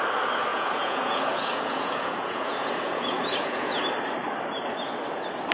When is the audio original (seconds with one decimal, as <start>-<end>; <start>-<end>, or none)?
0.0-0.5; 3.8-5.5